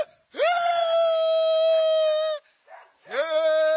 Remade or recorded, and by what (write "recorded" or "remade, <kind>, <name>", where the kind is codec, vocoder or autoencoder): recorded